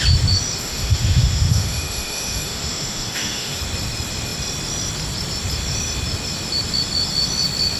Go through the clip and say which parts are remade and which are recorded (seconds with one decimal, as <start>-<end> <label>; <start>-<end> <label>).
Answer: 0.0-0.6 recorded; 0.6-3.6 remade; 3.6-7.8 recorded